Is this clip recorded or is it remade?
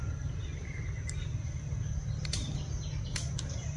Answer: recorded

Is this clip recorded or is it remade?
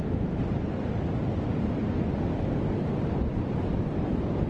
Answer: recorded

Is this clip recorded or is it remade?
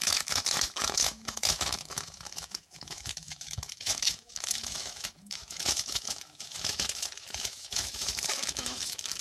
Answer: remade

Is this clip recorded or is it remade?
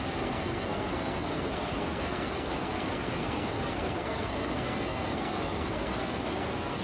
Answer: remade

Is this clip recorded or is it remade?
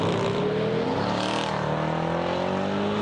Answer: recorded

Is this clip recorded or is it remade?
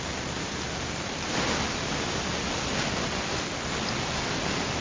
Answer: recorded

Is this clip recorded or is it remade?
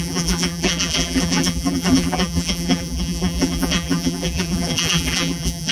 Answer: remade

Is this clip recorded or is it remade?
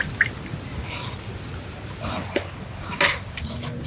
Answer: recorded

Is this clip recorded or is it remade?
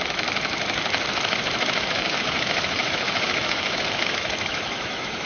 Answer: remade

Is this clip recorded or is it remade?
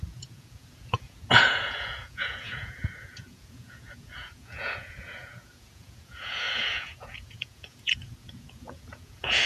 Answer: remade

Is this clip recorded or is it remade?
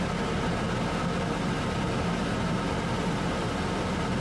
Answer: recorded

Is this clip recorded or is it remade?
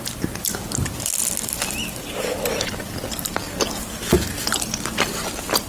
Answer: recorded